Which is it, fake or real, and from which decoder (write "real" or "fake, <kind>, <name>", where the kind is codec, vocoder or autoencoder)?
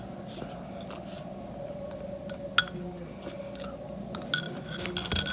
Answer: real